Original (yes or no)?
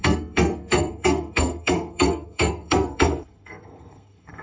no